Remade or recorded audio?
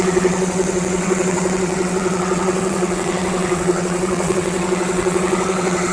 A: remade